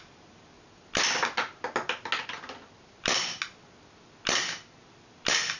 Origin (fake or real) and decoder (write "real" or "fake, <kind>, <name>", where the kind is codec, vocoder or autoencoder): real